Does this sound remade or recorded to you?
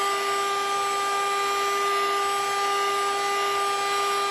recorded